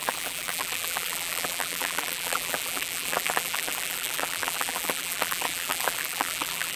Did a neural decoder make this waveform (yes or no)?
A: yes